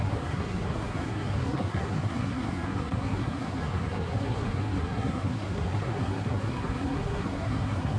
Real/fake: fake